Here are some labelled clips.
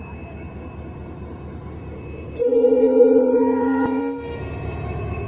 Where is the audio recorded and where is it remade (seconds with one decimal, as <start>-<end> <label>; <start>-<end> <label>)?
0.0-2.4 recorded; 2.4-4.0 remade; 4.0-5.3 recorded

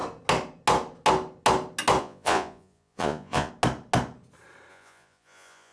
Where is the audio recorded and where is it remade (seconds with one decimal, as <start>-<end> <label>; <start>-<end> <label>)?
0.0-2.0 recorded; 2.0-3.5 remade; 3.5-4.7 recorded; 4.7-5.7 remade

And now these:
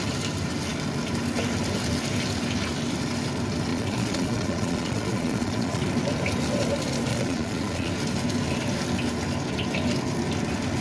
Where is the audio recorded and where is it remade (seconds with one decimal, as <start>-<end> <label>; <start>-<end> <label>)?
0.0-3.7 recorded; 3.7-5.8 remade; 5.8-7.1 recorded; 7.1-7.9 remade; 7.9-10.8 recorded

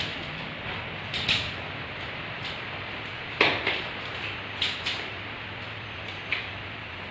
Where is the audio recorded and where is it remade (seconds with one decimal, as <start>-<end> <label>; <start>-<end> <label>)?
0.0-7.1 recorded

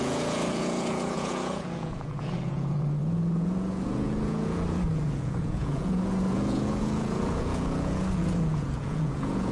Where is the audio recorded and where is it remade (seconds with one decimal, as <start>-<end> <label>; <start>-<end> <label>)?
0.0-9.5 remade